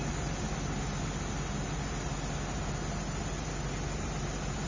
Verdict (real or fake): real